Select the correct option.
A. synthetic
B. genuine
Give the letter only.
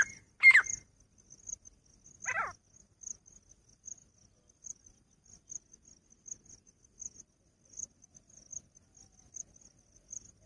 B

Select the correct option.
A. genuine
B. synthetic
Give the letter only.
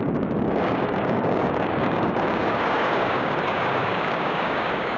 B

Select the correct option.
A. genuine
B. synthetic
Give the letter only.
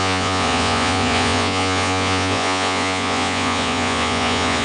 B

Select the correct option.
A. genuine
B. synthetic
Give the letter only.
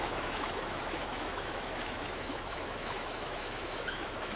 B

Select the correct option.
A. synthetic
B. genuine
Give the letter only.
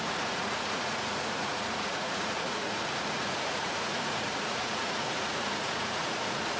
A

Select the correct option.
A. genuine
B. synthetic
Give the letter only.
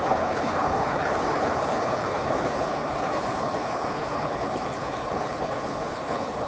B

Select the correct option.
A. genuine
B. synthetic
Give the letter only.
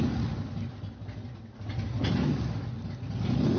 A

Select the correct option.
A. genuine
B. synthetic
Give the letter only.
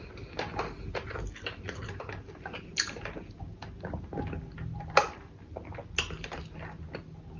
A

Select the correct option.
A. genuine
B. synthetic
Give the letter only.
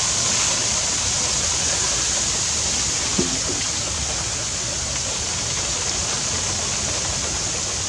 A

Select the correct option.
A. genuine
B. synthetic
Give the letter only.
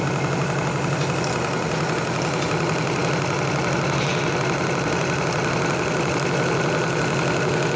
A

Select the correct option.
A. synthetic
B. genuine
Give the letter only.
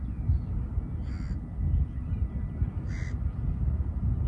B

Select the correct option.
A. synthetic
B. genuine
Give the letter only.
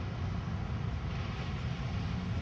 B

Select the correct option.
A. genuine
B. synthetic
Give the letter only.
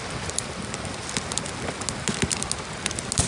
A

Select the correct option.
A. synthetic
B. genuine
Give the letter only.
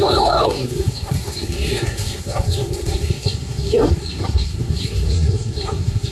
A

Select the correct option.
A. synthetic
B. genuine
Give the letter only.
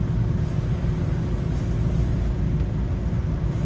B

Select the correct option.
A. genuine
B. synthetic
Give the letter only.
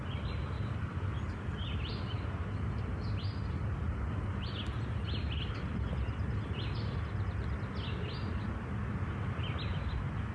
A